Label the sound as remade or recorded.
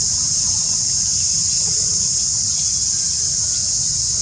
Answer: recorded